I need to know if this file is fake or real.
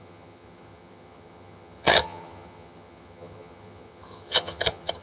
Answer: fake